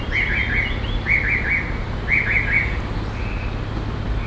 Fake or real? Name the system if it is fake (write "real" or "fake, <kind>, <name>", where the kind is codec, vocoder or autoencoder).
real